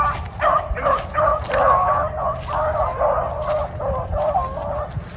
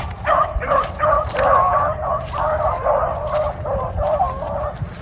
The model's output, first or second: second